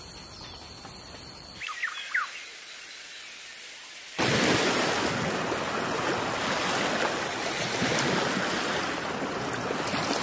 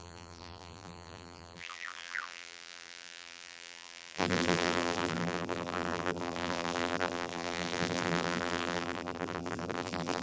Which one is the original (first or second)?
first